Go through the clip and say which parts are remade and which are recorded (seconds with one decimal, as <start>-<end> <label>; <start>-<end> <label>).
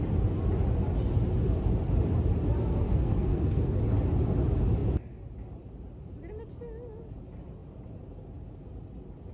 0.0-2.6 recorded; 2.6-3.8 remade; 3.8-9.3 recorded